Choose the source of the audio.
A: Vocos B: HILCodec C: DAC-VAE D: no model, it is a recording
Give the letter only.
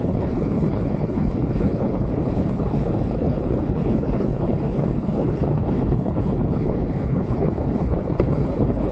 B